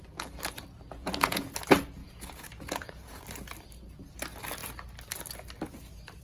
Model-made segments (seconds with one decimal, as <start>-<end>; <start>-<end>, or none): 1.0-1.5; 2.0-3.2

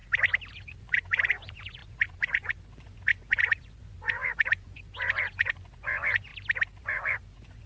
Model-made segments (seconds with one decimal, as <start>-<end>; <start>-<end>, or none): 0.5-6.3; 6.8-7.7

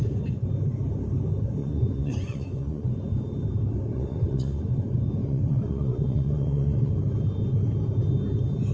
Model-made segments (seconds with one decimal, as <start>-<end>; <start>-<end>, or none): 1.6-2.9; 3.9-4.8; 5.2-6.9

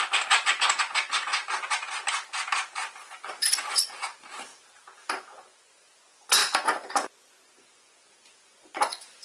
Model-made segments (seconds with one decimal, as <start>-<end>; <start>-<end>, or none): 0.0-1.3; 3.1-4.5; 5.2-9.2

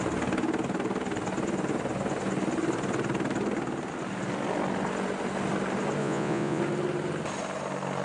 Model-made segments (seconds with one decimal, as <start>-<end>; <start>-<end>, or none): 6.0-6.6

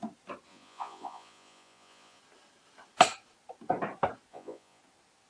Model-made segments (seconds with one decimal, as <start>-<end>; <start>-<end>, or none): 0.5-2.2; 4.3-4.8

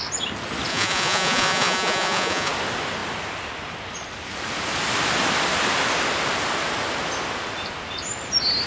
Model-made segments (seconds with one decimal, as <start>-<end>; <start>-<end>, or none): 0.7-2.5